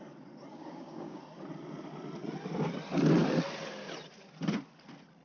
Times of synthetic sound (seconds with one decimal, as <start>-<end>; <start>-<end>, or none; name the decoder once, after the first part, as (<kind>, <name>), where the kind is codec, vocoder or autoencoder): 0.5-1.2 (codec, DAC)